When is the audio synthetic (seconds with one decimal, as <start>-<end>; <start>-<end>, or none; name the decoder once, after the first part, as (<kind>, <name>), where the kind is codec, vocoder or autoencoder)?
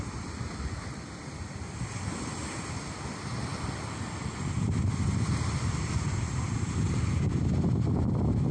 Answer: none